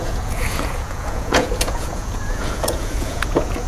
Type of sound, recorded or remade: remade